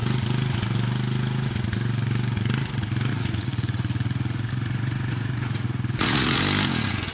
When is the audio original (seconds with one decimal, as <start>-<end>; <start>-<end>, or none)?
0.0-3.1; 6.4-7.1